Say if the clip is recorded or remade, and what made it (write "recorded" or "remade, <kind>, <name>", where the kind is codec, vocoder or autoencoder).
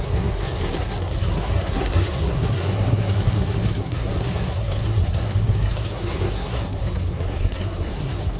remade, codec, SNAC